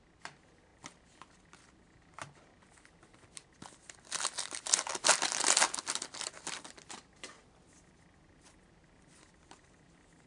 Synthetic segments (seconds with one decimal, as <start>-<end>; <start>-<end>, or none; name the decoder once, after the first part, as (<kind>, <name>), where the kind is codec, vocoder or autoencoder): none